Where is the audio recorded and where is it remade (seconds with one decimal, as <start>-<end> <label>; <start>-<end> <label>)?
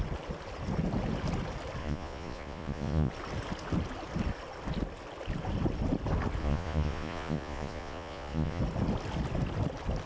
0.0-1.8 recorded; 1.8-3.1 remade; 3.1-6.4 recorded; 6.4-8.6 remade; 8.6-10.1 recorded